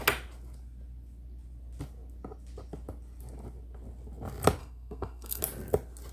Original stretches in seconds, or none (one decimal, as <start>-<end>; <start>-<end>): 0.0-4.6; 5.4-6.1